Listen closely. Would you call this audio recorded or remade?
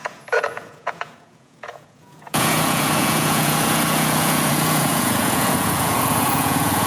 remade